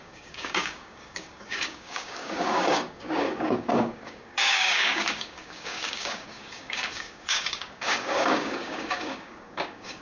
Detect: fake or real fake